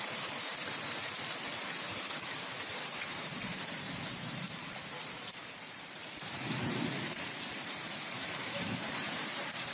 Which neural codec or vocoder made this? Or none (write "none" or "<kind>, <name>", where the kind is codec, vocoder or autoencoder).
vocoder, BigVGAN v2